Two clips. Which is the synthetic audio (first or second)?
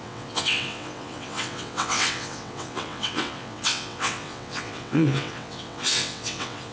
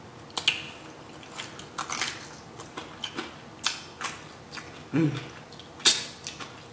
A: first